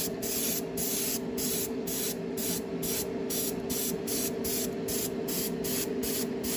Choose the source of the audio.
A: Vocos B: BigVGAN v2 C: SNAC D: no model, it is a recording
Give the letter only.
D